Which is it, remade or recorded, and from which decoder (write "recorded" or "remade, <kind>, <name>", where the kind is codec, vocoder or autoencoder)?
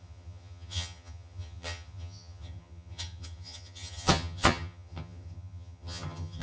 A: remade, vocoder, HiFi-GAN